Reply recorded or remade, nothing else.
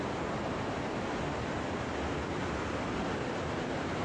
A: recorded